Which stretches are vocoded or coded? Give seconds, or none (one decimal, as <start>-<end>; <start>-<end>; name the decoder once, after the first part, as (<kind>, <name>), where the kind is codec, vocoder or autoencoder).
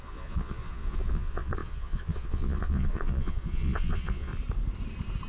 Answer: 0.0-4.3 (vocoder, Vocos)